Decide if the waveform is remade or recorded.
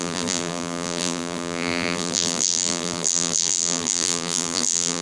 remade